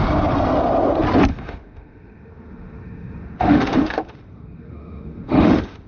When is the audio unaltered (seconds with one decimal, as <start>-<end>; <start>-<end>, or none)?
0.0-1.3